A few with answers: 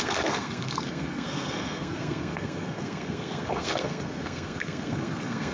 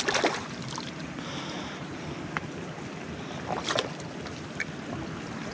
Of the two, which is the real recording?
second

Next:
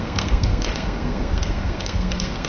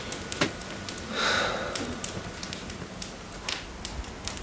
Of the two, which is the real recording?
second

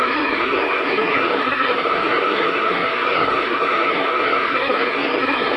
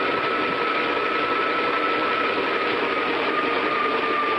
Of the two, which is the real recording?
second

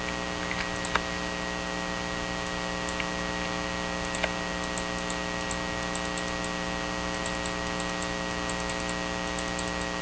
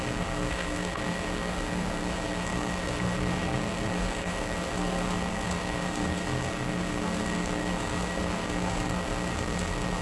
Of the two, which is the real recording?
first